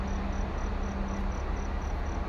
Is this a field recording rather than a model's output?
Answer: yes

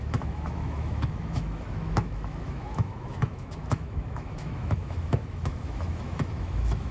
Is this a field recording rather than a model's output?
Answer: no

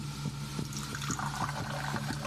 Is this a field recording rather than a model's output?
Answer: yes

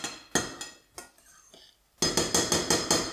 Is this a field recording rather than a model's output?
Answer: yes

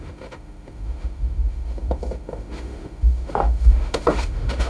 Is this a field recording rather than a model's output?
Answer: no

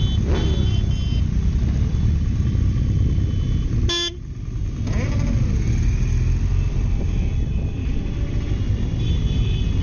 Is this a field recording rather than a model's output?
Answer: yes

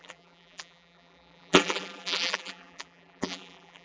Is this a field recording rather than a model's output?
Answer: no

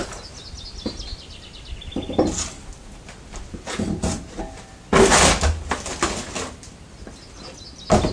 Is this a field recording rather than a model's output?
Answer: yes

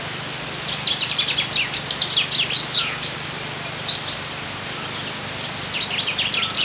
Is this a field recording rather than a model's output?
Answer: yes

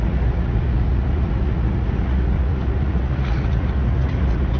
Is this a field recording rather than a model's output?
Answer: no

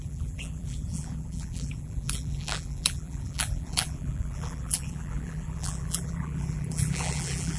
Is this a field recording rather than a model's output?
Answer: no